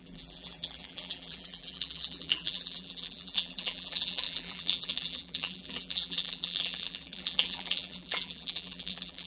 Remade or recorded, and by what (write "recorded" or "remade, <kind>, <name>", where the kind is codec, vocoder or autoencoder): remade, vocoder, BigVGAN v2